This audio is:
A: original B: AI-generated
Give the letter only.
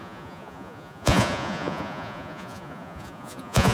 B